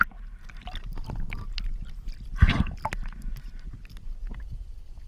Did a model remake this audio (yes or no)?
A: no